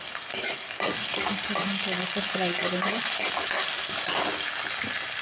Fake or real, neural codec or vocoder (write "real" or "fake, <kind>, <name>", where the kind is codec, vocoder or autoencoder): real